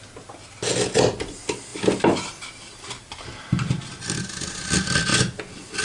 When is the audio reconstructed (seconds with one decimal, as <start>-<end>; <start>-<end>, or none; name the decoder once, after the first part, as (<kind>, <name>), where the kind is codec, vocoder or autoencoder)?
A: none

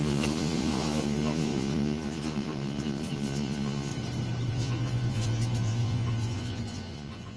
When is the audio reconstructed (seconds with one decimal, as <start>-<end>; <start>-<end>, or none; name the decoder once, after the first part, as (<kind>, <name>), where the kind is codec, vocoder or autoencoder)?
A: 0.0-3.9 (vocoder, Vocos); 4.5-7.4

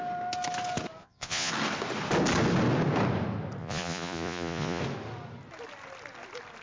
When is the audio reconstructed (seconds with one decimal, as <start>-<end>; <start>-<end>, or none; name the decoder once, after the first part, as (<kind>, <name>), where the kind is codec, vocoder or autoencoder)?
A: 1.0-1.5 (vocoder, Vocos); 3.6-4.8